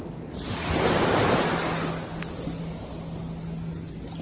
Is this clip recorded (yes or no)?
yes